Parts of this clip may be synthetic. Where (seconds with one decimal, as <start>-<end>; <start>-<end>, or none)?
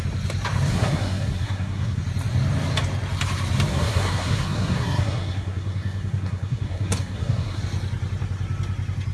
0.7-2.0; 3.7-7.6